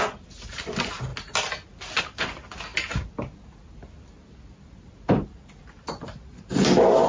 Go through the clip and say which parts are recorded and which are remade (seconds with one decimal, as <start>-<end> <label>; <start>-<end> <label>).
0.0-7.1 recorded